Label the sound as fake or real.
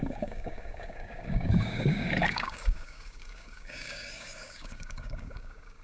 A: fake